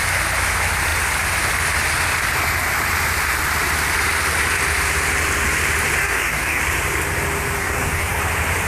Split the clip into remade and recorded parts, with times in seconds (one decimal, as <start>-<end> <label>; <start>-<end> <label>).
0.0-6.0 recorded; 6.0-6.6 remade; 6.6-7.6 recorded; 7.6-8.2 remade; 8.2-8.7 recorded